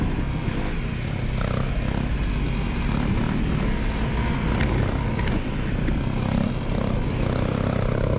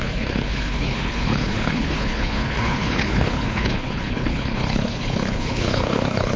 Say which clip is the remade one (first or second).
second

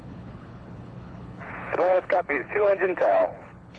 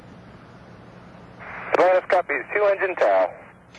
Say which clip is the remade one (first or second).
first